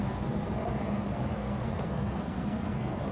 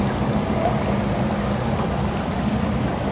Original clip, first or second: second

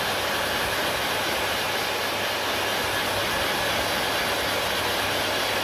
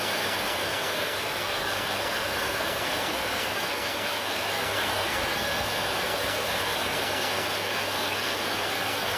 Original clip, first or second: first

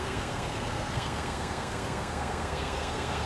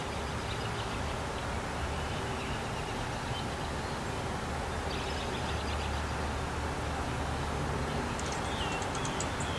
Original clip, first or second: second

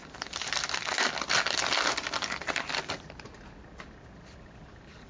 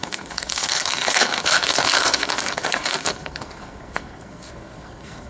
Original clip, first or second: first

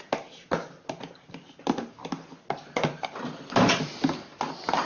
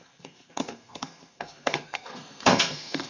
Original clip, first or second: first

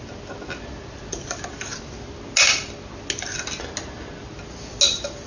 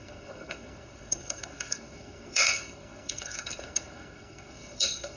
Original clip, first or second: first